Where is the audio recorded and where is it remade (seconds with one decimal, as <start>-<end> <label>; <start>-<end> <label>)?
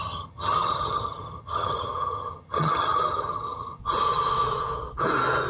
0.0-3.8 remade; 3.8-5.5 recorded